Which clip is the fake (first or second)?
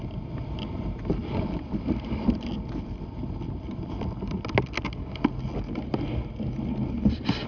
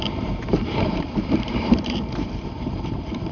second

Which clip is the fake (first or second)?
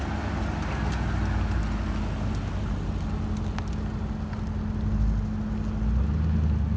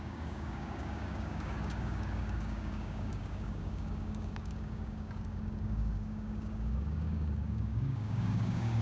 second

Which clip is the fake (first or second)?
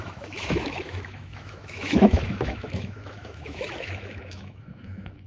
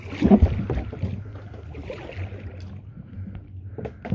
first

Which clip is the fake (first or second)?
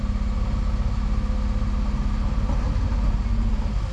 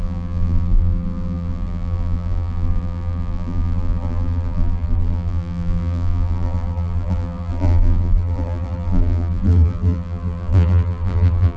second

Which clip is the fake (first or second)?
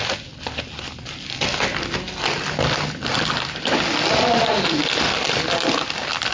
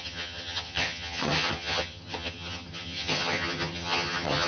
second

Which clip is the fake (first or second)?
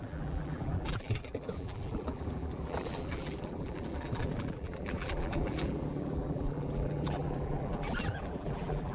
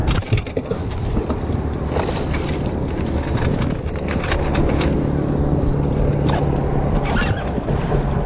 first